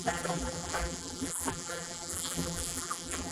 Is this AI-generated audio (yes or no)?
yes